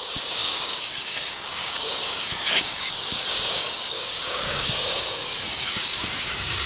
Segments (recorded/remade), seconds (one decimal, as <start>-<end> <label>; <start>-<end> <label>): 0.0-6.7 remade